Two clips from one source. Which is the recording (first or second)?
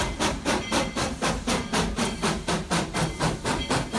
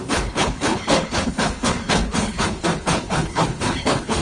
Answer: first